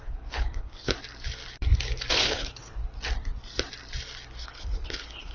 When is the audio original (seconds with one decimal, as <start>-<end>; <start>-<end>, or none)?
0.9-2.1; 2.8-4.4